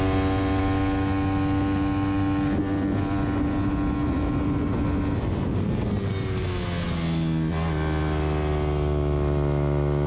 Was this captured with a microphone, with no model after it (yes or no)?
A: yes